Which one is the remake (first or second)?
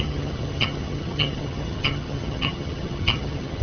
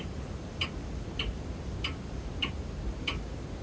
first